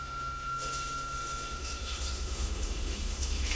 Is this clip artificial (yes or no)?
yes